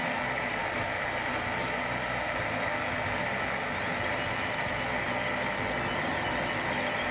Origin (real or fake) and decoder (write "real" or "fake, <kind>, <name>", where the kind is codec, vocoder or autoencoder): real